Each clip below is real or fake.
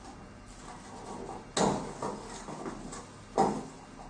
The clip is real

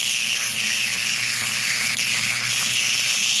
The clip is fake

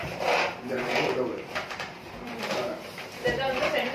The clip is fake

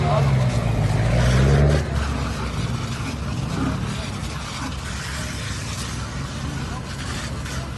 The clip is real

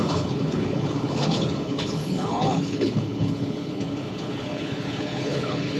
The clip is fake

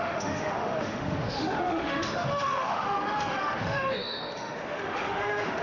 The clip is fake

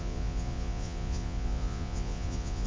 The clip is fake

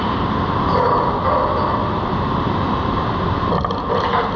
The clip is real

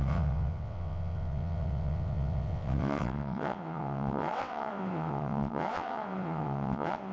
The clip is fake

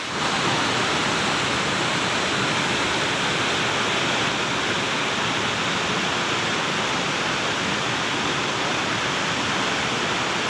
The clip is real